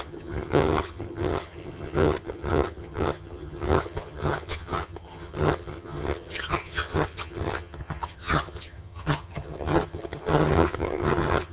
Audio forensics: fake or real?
fake